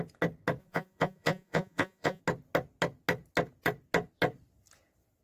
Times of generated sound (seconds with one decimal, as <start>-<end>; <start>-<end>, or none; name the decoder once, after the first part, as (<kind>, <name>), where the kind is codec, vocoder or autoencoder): 0.6-2.2 (vocoder, Vocos)